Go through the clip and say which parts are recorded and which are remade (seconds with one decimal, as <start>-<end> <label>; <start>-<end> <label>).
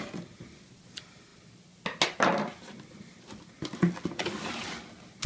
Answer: 0.0-5.3 recorded